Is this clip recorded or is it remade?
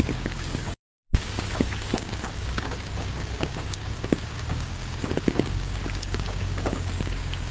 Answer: remade